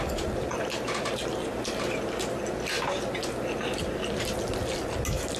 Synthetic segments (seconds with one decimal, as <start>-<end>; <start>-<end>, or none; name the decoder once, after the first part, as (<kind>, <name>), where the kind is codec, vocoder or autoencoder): none